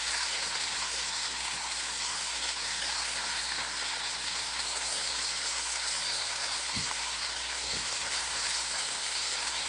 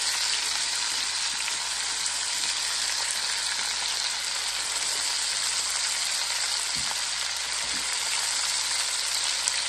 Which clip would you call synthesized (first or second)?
first